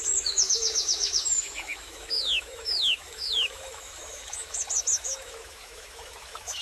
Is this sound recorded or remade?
remade